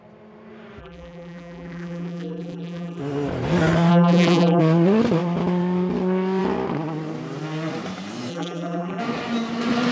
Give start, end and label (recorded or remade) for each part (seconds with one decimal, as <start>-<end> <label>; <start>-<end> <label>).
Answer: 0.0-0.8 recorded; 0.8-3.0 remade; 3.0-3.9 recorded; 3.9-4.6 remade; 4.6-8.3 recorded; 8.3-9.0 remade; 9.0-9.9 recorded